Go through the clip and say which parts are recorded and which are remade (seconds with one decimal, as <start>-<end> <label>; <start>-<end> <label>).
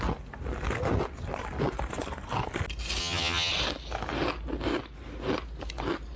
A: 0.0-3.0 recorded; 3.0-3.5 remade; 3.5-6.2 recorded